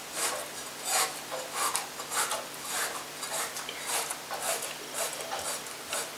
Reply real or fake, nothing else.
real